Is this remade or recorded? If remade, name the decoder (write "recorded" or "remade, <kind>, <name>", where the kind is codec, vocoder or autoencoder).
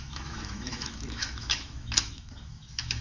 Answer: remade, autoencoder, DAC-VAE